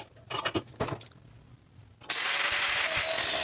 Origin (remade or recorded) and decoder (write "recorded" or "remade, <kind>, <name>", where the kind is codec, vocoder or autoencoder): recorded